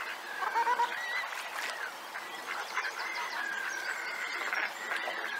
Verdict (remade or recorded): recorded